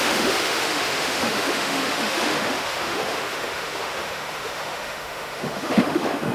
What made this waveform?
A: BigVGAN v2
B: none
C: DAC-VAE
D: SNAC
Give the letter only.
C